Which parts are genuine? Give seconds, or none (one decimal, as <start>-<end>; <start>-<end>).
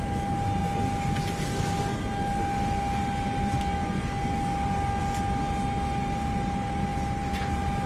0.0-7.9